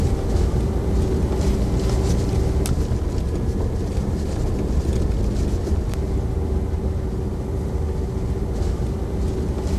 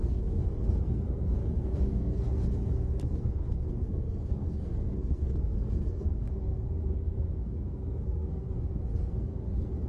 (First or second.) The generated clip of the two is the second